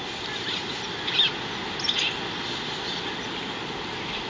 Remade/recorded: recorded